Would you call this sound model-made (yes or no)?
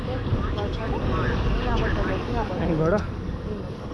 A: yes